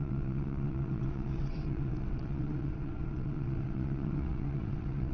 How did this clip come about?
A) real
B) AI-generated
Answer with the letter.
B